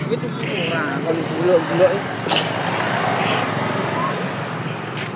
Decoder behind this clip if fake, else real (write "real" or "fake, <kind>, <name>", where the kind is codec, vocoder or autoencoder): real